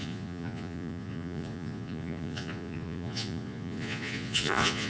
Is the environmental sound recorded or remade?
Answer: remade